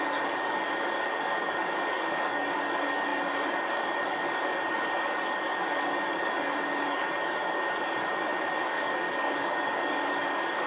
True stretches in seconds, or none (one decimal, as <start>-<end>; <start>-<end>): none